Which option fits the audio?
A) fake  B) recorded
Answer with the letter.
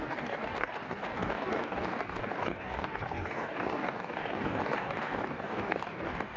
A